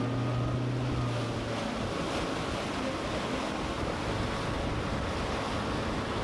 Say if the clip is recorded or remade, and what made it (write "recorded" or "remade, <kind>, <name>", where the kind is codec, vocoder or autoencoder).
recorded